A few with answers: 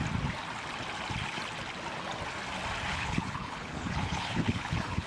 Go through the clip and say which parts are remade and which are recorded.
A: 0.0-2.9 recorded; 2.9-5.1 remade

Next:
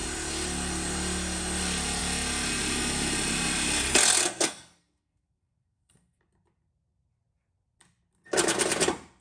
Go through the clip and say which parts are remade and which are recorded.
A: 0.0-4.2 recorded; 4.2-6.2 remade; 6.2-9.2 recorded

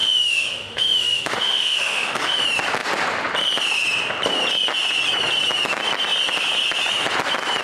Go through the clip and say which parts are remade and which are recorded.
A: 0.0-2.4 remade; 2.4-7.6 recorded

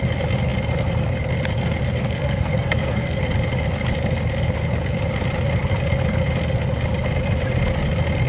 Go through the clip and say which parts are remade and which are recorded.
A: 0.0-2.0 recorded; 2.0-3.2 remade; 3.2-8.3 recorded

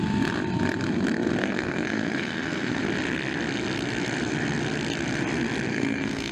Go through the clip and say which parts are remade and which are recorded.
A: 0.0-1.4 recorded; 1.4-2.8 remade; 2.8-5.7 recorded; 5.7-6.3 remade

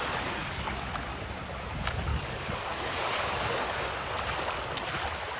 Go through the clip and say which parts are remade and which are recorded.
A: 0.0-0.4 recorded; 0.4-0.9 remade; 0.9-2.1 recorded; 2.1-3.9 remade; 3.9-5.4 recorded

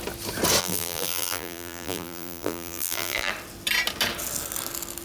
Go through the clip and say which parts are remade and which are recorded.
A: 0.0-0.6 recorded; 0.6-3.3 remade; 3.3-5.0 recorded